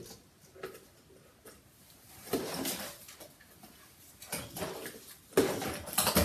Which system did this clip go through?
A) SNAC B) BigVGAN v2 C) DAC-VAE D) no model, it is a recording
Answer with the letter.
D